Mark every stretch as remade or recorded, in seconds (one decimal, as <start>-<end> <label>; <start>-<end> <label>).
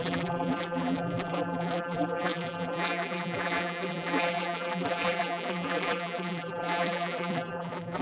0.0-8.0 remade